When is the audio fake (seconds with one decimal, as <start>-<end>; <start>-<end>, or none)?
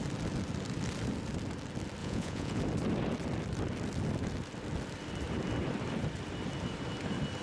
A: 2.0-2.6